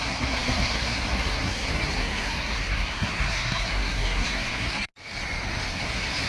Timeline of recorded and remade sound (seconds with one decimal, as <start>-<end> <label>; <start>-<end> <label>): 0.0-4.9 remade; 4.9-5.7 recorded; 5.7-6.3 remade